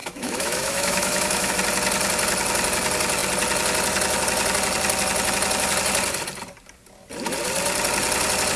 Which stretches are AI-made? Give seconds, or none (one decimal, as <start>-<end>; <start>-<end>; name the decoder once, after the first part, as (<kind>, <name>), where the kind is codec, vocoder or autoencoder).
0.0-1.5 (autoencoder, DAC-VAE)